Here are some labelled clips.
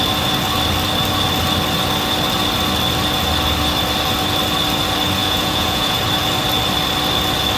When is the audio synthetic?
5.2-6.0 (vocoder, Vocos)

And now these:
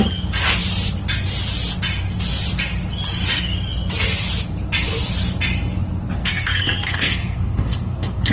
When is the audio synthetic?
6.2-8.3 (codec, SNAC)

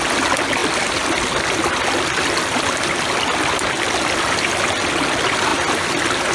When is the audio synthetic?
none

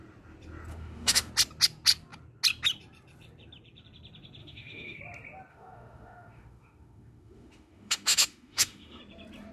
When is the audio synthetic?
0.7-1.3 (autoencoder, DAC-VAE); 4.4-5.0; 5.5-9.0

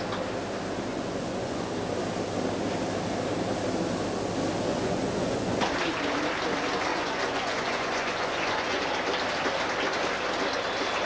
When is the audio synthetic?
0.9-1.7 (vocoder, Vocos); 4.7-5.6; 6.9-8.8

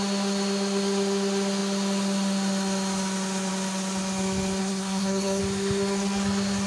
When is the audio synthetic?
4.6-5.4 (codec, SNAC)

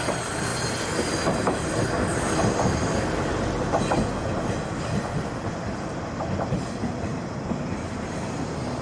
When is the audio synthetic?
none

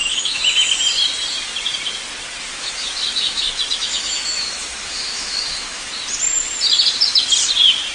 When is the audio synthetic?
0.0-0.7 (autoencoder, DAC-VAE); 2.5-5.9